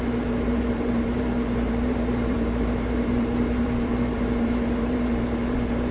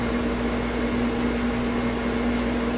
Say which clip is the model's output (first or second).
first